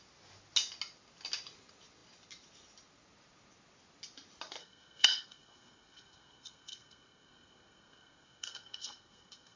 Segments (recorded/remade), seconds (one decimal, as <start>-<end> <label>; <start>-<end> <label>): 0.0-4.6 recorded; 4.6-9.6 remade